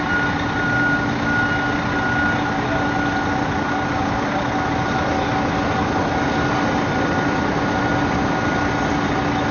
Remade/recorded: recorded